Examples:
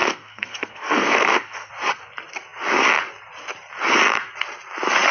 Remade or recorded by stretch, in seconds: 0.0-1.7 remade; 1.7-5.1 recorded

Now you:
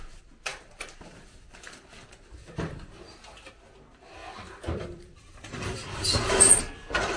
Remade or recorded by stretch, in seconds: 0.0-0.5 recorded; 0.5-3.5 remade; 3.5-4.2 recorded; 4.2-6.6 remade; 6.6-7.2 recorded

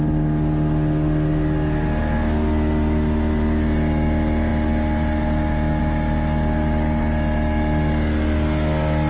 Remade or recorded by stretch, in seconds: 0.0-9.1 recorded

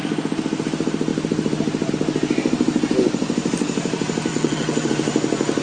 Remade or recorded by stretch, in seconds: 0.0-4.3 recorded; 4.3-4.9 remade; 4.9-5.6 recorded

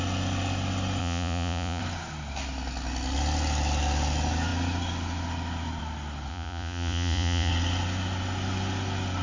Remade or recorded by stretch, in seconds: 0.0-1.0 recorded; 1.0-1.8 remade; 1.8-6.3 recorded; 6.3-7.5 remade; 7.5-9.2 recorded

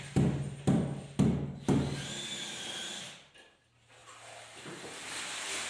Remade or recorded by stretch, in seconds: 0.0-5.7 recorded

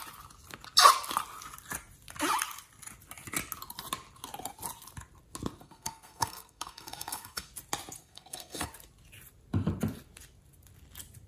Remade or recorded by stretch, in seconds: 0.0-5.6 recorded; 5.6-7.5 remade; 7.5-8.0 recorded; 8.0-8.7 remade; 8.7-11.3 recorded